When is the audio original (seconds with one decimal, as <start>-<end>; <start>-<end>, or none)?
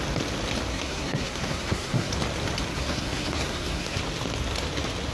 0.0-0.7; 2.1-2.7; 4.0-5.1